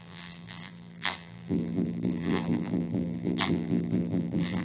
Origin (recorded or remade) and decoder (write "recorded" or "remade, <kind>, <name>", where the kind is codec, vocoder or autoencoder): remade, vocoder, BigVGAN v2